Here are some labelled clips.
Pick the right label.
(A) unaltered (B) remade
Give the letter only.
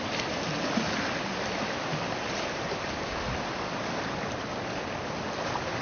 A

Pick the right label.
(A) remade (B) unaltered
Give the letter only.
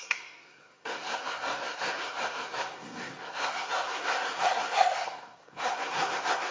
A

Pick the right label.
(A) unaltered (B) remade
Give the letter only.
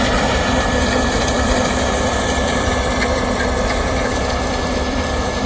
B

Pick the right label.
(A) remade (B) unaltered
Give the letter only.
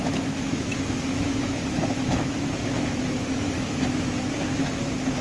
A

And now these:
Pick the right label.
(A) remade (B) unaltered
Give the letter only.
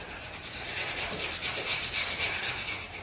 A